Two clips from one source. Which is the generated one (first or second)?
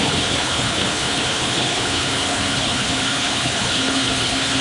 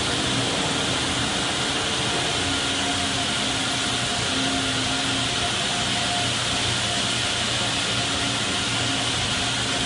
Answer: first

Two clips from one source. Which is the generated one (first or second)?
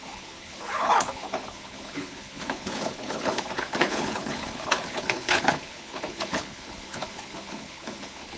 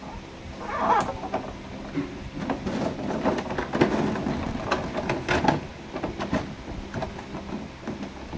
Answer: first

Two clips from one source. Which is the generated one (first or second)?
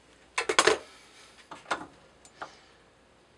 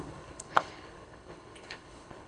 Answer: second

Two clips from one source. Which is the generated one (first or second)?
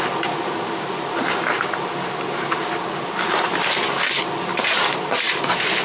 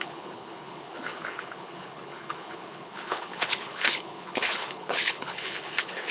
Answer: second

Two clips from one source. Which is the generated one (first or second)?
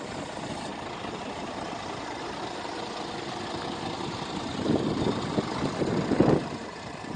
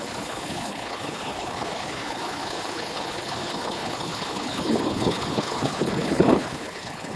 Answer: second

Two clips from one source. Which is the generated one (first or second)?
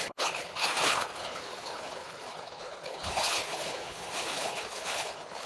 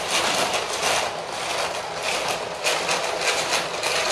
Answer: first